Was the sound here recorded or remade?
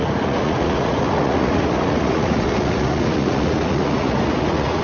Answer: remade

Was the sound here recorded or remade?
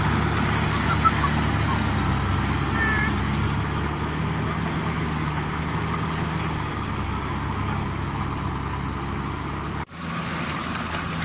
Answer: recorded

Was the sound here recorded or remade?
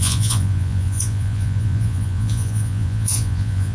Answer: remade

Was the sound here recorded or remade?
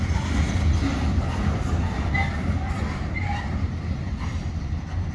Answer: recorded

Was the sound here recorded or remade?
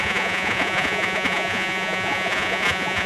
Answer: remade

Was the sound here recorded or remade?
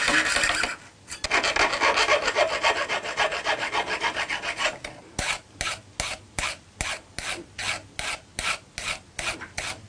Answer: recorded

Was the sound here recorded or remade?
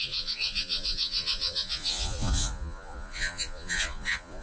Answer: remade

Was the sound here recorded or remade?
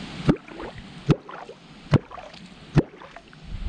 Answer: recorded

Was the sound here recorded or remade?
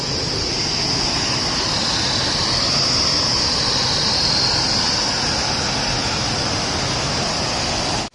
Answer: recorded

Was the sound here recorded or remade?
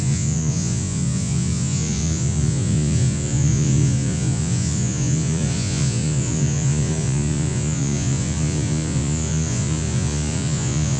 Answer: remade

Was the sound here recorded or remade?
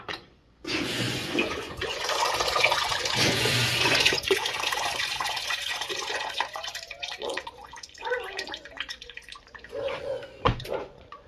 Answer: remade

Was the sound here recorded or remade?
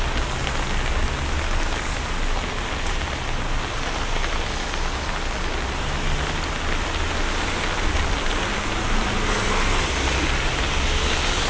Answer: recorded